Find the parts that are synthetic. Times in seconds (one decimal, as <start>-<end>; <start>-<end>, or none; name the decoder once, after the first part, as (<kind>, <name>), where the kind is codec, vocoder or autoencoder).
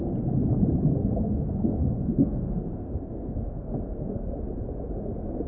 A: 1.0-4.3 (codec, SNAC)